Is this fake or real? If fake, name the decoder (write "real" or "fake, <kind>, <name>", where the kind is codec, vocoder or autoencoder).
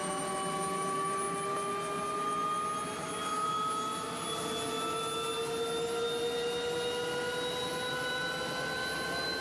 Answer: real